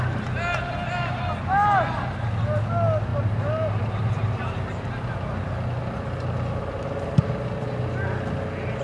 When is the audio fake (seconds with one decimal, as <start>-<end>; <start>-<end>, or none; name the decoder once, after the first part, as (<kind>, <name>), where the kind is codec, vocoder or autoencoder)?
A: 3.1-4.7 (vocoder, BigVGAN v2)

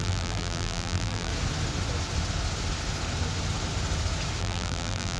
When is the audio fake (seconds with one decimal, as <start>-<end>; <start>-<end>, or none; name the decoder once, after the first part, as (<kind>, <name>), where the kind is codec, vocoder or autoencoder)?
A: 0.0-1.3 (vocoder, BigVGAN v2); 4.4-5.2

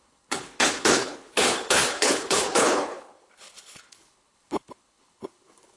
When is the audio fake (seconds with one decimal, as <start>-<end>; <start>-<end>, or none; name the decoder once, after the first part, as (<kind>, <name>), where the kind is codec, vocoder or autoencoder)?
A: 0.0-5.8 (codec, HILCodec)

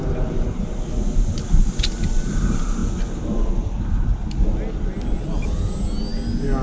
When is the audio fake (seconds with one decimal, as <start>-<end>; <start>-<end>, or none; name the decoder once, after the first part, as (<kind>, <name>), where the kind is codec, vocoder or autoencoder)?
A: none

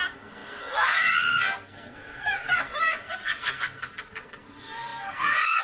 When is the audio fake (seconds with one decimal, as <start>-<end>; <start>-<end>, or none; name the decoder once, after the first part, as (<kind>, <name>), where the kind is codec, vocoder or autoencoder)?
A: 0.0-5.6 (codec, SNAC)

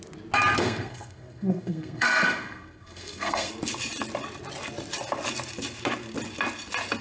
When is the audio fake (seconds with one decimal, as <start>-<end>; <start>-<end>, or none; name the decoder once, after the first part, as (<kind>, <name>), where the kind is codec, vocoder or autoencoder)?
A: 0.6-3.5 (codec, SNAC)